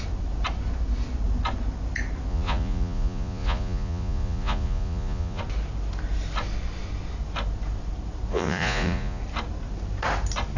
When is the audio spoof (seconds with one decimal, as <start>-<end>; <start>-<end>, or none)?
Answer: 2.3-5.4; 8.3-9.2